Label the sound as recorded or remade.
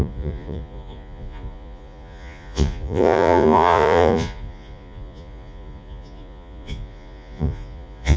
remade